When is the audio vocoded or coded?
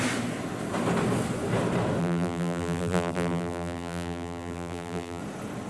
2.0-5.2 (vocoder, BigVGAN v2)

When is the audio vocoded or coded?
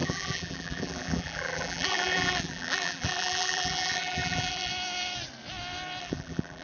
0.0-4.7 (vocoder, BigVGAN v2); 6.0-6.6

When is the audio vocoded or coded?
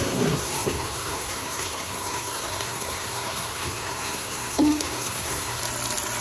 0.0-5.6 (codec, SNAC)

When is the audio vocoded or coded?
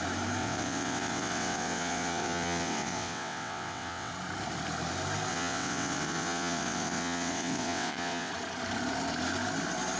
0.4-4.1 (vocoder, WaveNeXt); 5.3-8.3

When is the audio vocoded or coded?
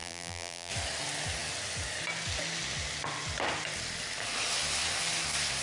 0.0-0.7 (vocoder, BigVGAN v2)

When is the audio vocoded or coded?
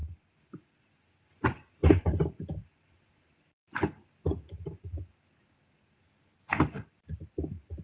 1.8-3.1 (vocoder, BigVGAN v2)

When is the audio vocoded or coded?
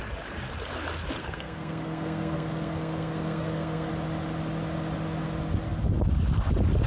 1.2-3.9 (codec, SNAC)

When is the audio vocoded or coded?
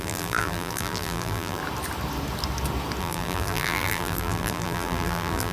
0.0-1.6 (vocoder, BigVGAN v2); 3.0-5.5